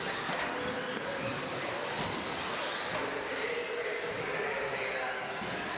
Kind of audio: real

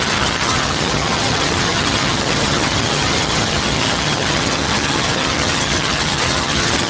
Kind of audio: fake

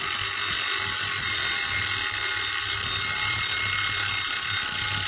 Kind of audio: real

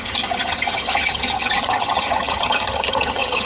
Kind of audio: fake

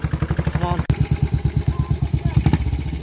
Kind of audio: real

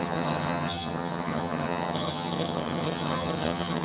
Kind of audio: fake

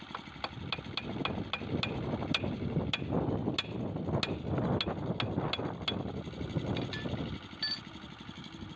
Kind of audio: real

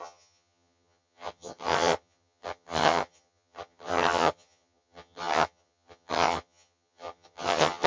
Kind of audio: fake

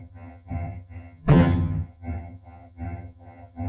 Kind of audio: fake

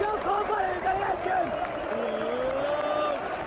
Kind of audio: real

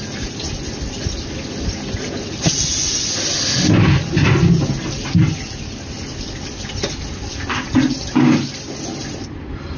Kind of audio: real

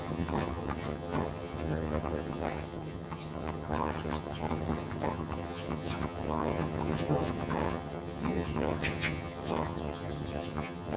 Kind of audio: fake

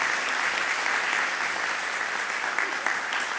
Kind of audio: real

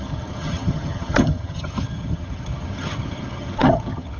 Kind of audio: fake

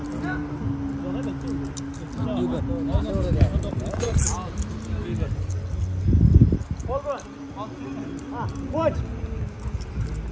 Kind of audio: real